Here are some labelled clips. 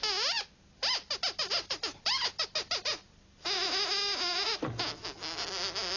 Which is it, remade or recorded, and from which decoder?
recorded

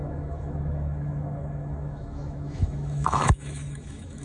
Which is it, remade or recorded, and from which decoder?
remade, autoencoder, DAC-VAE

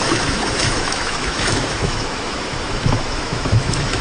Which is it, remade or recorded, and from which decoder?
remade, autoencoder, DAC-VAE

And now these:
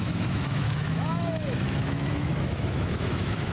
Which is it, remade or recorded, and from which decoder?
remade, autoencoder, DAC-VAE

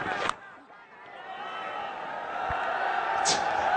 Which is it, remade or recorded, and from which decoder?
recorded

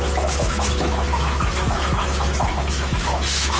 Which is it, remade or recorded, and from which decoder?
remade, autoencoder, DAC-VAE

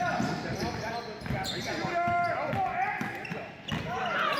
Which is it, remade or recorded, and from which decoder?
recorded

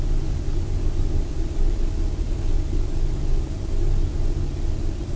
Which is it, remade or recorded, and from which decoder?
recorded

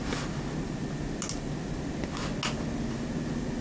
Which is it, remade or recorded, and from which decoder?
recorded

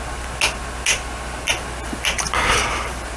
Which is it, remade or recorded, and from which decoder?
recorded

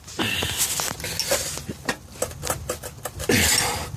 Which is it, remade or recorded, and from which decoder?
recorded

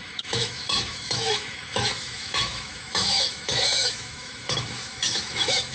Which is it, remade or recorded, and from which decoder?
remade, autoencoder, DAC-VAE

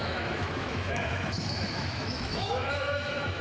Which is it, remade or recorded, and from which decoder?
remade, autoencoder, DAC-VAE